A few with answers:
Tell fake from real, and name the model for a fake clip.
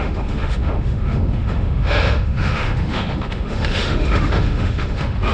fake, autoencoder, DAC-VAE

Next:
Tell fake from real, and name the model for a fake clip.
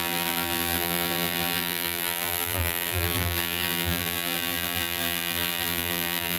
fake, vocoder, BigVGAN v2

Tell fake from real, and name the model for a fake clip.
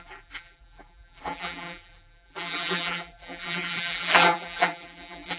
fake, vocoder, BigVGAN v2